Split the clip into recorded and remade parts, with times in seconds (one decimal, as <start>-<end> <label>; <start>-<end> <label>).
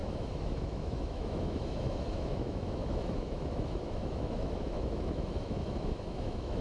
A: 0.0-6.6 remade